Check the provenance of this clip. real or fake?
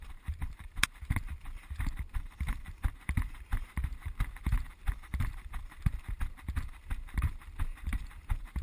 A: fake